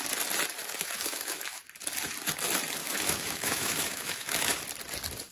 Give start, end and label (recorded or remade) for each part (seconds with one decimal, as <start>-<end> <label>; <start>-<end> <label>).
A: 0.0-0.6 recorded; 0.6-1.6 remade; 1.6-2.8 recorded; 2.8-4.6 remade; 4.6-5.3 recorded